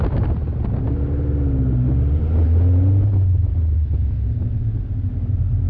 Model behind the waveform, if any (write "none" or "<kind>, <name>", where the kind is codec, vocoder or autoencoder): none